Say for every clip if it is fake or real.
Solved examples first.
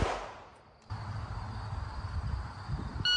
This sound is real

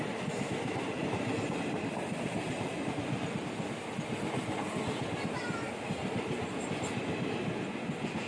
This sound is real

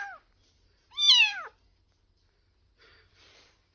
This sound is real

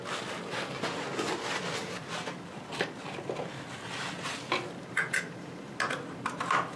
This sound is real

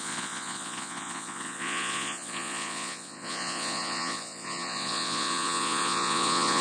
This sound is fake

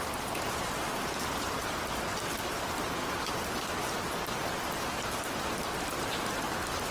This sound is real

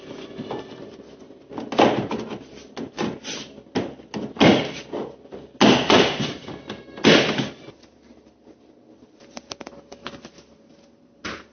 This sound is real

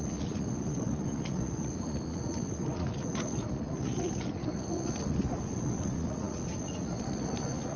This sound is fake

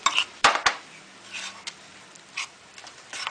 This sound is real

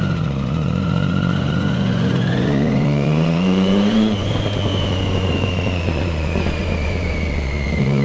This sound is fake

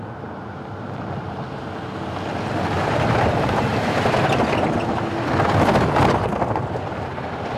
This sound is real